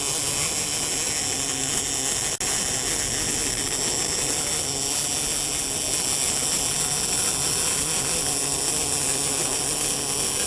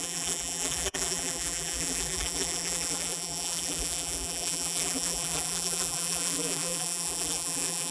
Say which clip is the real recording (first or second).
first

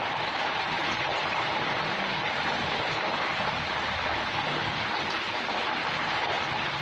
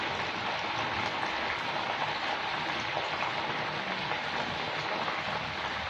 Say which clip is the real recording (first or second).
second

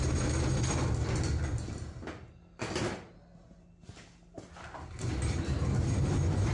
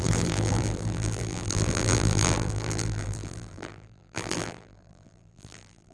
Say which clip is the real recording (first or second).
first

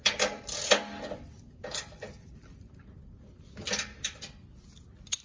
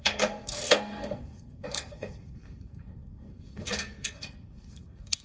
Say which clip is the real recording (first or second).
first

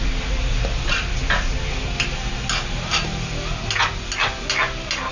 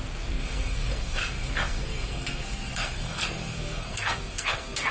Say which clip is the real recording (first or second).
first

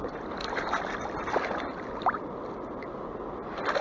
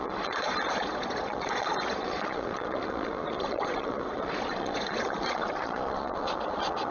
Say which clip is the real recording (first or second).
first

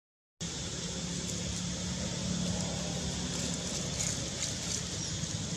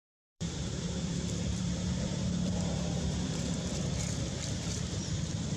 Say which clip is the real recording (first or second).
first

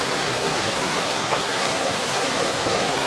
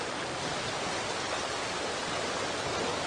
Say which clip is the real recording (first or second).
second